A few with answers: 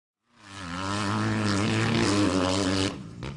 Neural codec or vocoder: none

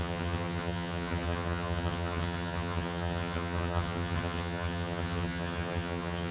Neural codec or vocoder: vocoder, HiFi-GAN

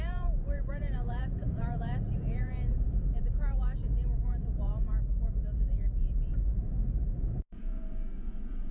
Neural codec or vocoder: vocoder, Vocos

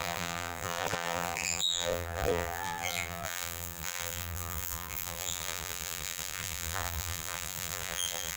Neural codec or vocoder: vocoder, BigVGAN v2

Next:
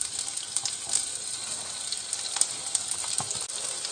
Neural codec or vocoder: none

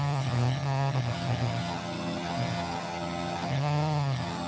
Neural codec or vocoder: vocoder, HiFi-GAN